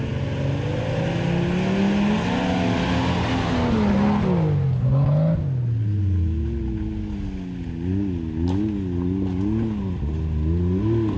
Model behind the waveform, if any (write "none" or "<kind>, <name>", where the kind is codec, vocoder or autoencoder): none